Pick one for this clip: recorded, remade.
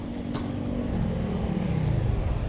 recorded